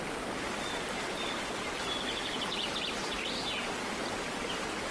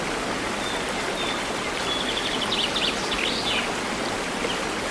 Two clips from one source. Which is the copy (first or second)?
first